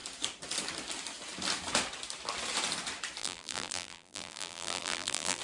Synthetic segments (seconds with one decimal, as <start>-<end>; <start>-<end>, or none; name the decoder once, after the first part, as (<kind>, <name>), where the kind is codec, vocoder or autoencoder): 3.2-5.4 (vocoder, BigVGAN v2)

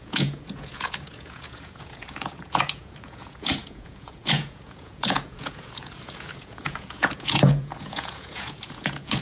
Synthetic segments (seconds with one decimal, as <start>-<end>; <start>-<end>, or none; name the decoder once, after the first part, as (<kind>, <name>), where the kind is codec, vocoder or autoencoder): 0.0-9.2 (vocoder, Vocos)

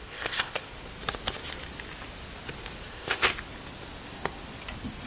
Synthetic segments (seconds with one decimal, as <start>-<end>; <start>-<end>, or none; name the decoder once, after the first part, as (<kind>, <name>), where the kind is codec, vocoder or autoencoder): 0.0-0.7 (codec, ZipCodec); 2.9-3.3

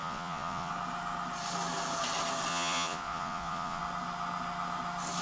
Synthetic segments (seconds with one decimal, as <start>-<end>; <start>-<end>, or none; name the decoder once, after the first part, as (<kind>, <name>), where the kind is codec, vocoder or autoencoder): 0.0-0.7 (vocoder, Vocos); 2.5-3.8

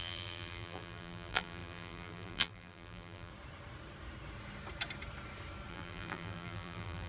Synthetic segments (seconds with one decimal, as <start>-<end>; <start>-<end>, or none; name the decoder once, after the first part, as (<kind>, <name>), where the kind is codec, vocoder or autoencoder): 0.0-3.3 (vocoder, BigVGAN v2); 5.7-7.1

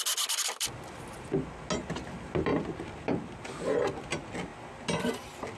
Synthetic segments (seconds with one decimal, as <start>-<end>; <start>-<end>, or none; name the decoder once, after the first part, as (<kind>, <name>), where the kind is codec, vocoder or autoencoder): none

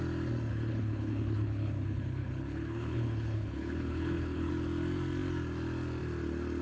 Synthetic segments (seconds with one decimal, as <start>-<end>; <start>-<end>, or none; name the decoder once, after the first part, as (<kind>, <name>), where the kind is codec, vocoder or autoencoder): 0.5-4.5 (codec, HILCodec)